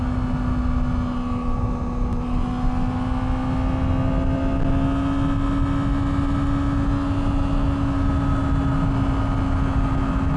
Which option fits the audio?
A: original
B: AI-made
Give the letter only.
A